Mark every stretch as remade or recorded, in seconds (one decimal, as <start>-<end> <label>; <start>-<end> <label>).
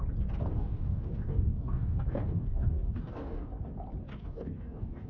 0.0-0.5 recorded; 0.5-3.6 remade; 3.6-4.1 recorded; 4.1-5.1 remade